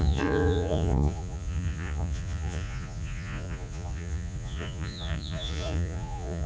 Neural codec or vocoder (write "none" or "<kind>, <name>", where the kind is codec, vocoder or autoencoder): vocoder, Vocos